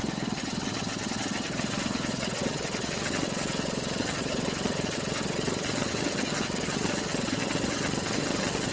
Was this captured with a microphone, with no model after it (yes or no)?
no